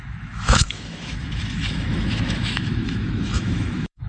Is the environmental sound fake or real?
fake